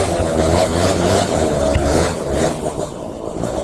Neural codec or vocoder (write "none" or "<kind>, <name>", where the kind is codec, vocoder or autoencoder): codec, HILCodec